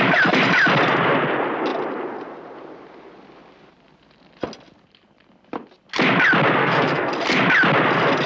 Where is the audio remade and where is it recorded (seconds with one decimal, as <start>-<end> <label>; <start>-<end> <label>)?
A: 0.0-6.6 recorded; 6.6-7.1 remade; 7.1-8.3 recorded